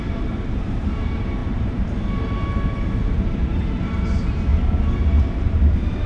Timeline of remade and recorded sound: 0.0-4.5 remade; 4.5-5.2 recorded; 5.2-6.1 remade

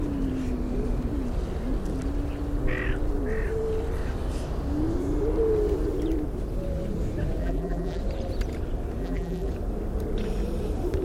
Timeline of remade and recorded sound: 0.0-7.4 recorded; 7.4-8.0 remade; 8.0-9.0 recorded; 9.0-9.5 remade; 9.5-11.0 recorded